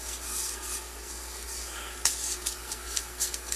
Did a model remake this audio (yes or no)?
yes